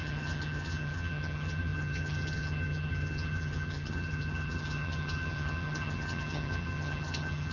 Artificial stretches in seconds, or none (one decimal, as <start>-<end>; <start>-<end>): 0.0-7.5